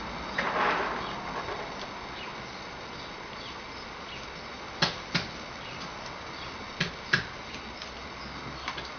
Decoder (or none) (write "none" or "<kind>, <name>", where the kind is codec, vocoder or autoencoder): none